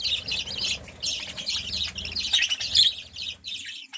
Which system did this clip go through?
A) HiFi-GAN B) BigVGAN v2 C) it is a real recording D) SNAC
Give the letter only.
C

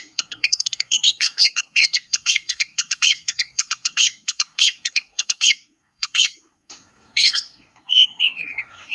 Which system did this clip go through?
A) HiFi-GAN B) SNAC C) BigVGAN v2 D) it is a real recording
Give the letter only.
B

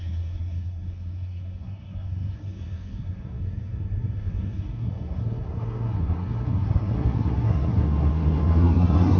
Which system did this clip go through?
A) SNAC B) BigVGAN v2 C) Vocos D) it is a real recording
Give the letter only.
A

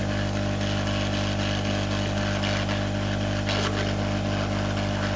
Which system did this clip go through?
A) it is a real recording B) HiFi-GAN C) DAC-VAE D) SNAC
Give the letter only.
A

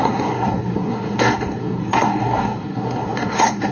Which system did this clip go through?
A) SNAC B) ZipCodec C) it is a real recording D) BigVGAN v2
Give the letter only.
A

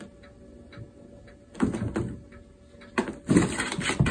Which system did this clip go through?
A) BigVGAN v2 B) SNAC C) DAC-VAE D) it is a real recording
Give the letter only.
D